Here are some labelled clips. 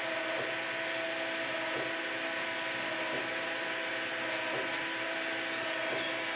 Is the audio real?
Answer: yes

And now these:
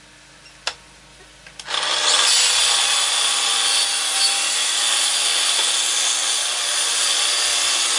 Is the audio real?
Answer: yes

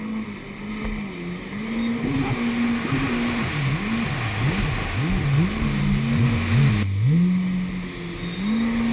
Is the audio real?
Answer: yes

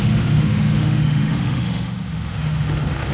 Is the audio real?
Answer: no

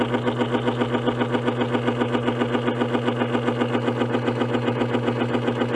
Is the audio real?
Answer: yes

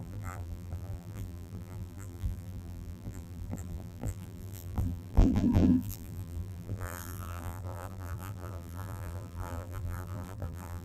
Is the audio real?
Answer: no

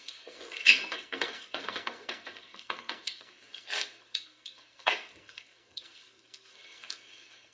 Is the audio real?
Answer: no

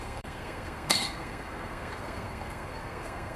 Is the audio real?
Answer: no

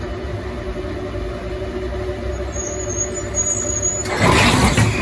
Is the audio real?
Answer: yes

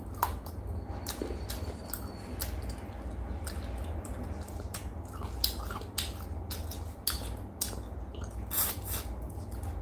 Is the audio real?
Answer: yes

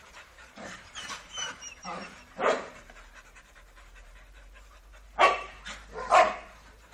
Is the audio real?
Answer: no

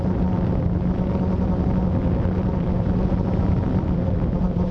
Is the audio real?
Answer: yes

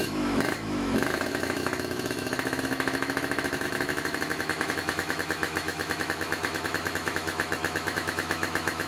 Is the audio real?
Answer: no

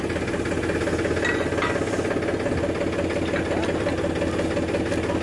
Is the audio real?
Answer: yes